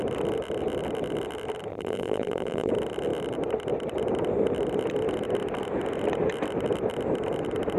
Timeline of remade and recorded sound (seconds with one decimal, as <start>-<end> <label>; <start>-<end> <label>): 0.0-1.7 recorded; 1.7-2.7 remade; 2.7-7.8 recorded